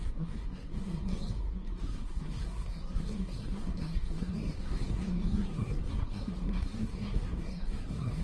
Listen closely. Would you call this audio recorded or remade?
remade